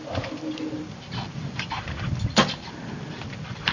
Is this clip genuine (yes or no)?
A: yes